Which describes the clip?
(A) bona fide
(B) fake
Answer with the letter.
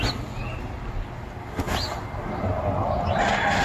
A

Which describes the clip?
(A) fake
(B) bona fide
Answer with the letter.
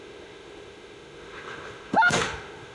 A